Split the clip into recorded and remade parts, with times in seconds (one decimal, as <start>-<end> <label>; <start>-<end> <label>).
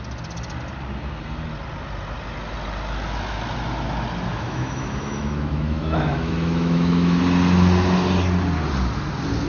0.0-4.3 recorded; 4.3-7.2 remade; 7.2-9.5 recorded